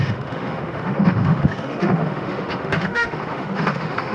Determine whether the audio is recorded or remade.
remade